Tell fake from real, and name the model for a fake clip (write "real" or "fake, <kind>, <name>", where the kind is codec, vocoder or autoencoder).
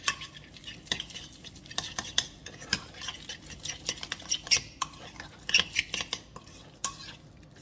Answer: real